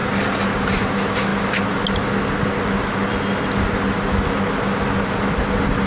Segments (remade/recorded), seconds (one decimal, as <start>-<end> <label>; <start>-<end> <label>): 0.0-5.9 recorded